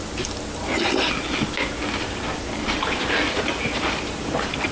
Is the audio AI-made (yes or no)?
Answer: no